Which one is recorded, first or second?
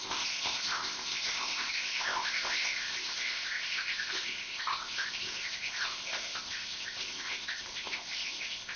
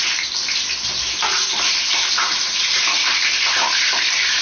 second